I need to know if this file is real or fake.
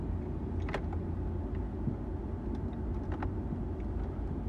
real